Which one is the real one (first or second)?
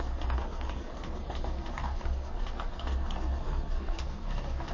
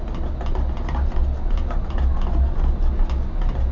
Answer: second